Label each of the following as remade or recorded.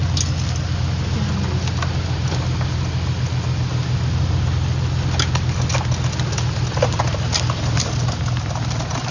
recorded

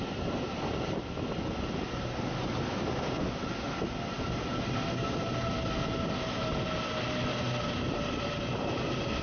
recorded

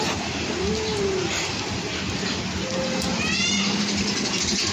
recorded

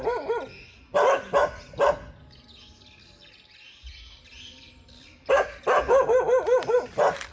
recorded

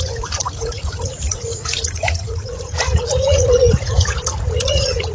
remade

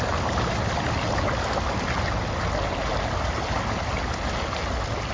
recorded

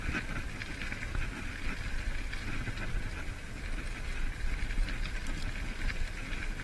recorded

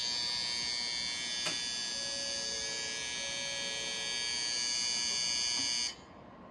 recorded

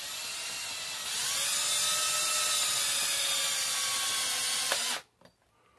recorded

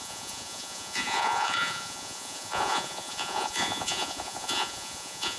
remade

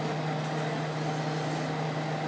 recorded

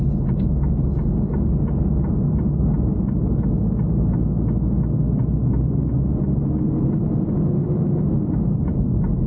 recorded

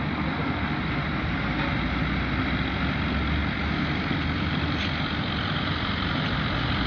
recorded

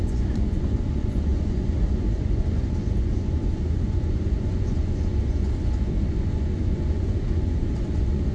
remade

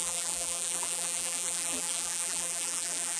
remade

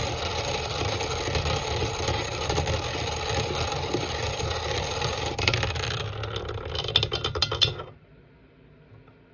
recorded